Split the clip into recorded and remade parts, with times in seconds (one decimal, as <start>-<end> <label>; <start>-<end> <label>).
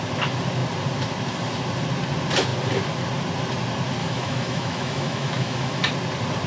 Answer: 0.0-4.0 recorded; 4.0-5.9 remade; 5.9-6.5 recorded